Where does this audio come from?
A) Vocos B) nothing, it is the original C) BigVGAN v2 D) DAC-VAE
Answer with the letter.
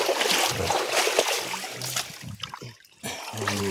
B